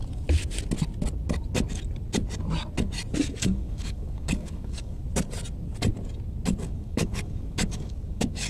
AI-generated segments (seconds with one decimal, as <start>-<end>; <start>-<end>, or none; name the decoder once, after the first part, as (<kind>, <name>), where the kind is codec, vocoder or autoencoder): 3.2-5.0 (codec, DAC); 6.6-8.5